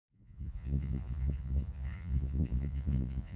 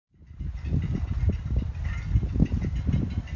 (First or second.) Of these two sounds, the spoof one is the first